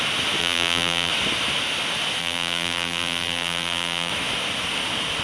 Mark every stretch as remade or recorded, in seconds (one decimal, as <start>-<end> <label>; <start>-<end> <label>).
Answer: 0.0-0.4 recorded; 0.4-1.1 remade; 1.1-2.2 recorded; 2.2-4.1 remade; 4.1-5.2 recorded